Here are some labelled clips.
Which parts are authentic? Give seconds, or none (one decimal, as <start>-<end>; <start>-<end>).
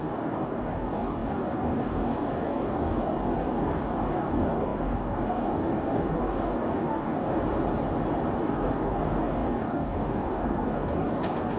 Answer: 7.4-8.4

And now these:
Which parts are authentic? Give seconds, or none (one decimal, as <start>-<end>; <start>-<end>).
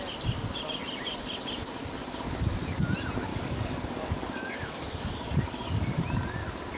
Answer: 0.0-3.3; 6.0-6.8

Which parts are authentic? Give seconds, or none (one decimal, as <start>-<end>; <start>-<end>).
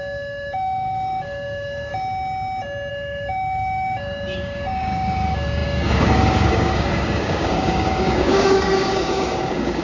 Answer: 1.9-2.9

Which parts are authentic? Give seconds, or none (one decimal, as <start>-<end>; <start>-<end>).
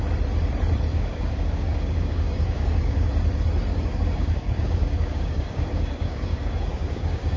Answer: 0.0-0.9; 3.1-3.7